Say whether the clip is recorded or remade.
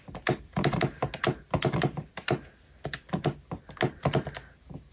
recorded